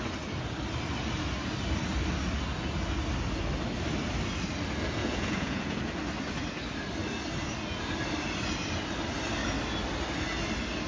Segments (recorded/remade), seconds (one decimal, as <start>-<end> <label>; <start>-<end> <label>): 0.0-5.0 recorded; 5.0-5.8 remade; 5.8-10.9 recorded